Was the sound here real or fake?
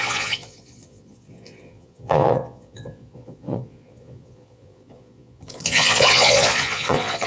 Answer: fake